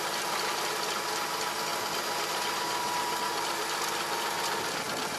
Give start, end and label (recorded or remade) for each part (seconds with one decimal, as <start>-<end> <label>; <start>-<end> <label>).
0.0-5.2 recorded